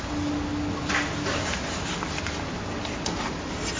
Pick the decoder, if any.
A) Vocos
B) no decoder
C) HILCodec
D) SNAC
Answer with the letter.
B